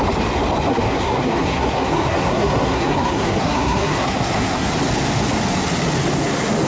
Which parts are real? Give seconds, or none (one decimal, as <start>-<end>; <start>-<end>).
0.0-0.7; 4.7-6.7